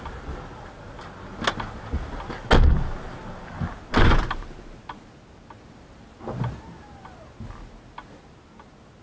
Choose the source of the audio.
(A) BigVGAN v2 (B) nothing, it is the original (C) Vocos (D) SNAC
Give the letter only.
B